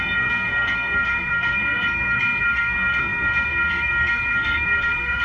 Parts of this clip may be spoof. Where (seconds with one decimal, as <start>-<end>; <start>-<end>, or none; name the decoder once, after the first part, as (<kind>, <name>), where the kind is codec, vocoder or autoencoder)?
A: 0.0-5.2 (codec, SNAC)